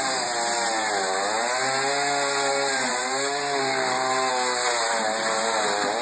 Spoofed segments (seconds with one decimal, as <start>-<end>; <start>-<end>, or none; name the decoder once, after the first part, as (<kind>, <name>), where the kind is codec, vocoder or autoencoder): none